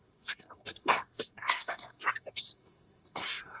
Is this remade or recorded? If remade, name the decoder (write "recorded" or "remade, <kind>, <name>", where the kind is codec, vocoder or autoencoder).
remade, codec, SNAC